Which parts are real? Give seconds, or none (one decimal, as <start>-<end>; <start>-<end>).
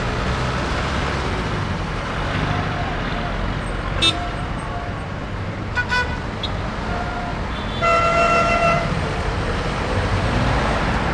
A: 0.0-7.3; 10.2-11.1